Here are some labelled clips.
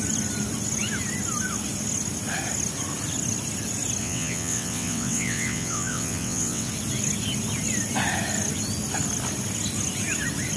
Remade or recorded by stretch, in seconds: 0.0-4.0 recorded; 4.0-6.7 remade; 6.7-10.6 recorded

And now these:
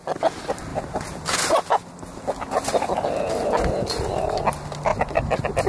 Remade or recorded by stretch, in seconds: 0.0-5.7 recorded

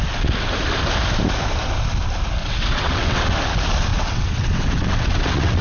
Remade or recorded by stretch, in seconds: 0.0-2.4 recorded; 2.4-3.2 remade; 3.2-3.9 recorded; 3.9-5.6 remade

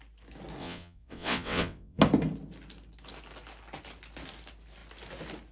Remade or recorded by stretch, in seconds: 0.0-0.6 recorded; 0.6-2.0 remade; 2.0-5.5 recorded

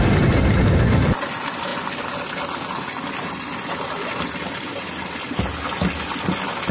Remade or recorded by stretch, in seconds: 0.0-6.7 recorded

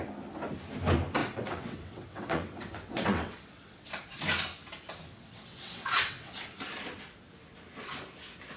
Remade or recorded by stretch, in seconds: 0.0-1.2 recorded; 1.2-3.9 remade; 3.9-5.1 recorded; 5.1-6.5 remade; 6.5-8.6 recorded